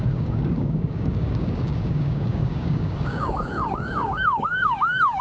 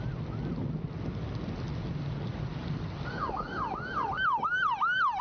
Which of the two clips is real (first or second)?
second